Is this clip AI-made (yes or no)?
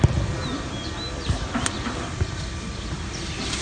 no